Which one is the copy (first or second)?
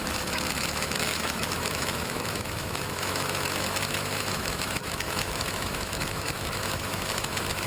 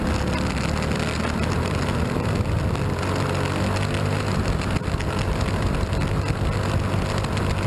first